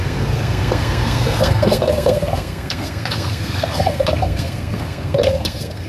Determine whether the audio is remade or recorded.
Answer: remade